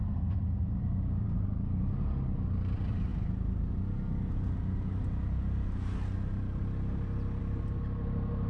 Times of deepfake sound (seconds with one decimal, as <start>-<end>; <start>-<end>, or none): none